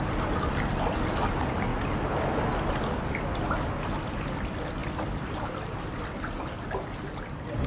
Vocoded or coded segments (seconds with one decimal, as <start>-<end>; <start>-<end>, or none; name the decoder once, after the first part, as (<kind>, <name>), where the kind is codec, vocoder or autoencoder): none